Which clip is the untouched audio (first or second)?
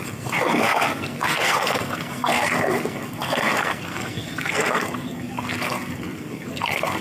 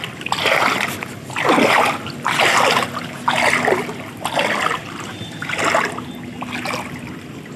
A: second